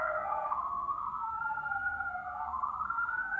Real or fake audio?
fake